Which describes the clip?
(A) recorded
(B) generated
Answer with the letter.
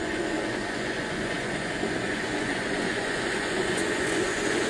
B